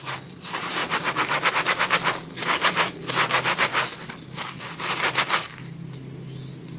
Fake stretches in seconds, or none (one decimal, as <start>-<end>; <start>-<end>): 0.8-1.5